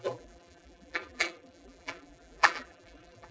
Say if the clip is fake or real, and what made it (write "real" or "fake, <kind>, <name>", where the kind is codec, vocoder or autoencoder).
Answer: fake, vocoder, BigVGAN v2